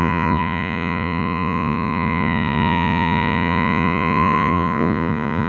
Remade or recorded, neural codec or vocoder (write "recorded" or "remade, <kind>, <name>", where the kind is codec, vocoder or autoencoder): remade, vocoder, Vocos